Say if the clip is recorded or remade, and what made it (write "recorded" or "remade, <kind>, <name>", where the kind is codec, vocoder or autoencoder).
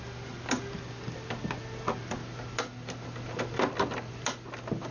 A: recorded